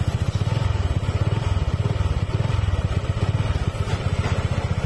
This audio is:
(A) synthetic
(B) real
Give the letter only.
B